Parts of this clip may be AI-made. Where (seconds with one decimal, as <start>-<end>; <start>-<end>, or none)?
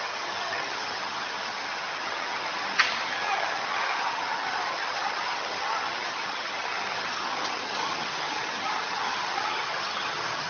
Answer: 0.0-10.5